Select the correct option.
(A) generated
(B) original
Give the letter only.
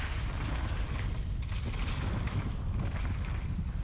B